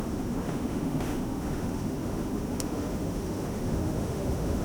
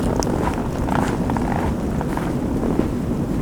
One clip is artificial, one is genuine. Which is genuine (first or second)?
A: second